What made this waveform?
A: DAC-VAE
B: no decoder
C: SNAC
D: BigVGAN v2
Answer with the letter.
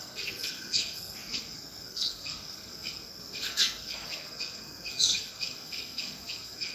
C